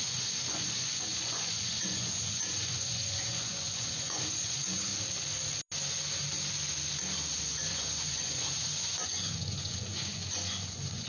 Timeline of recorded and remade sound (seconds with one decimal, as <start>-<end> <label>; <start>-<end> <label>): 0.0-4.9 remade; 4.9-7.3 recorded; 7.3-11.1 remade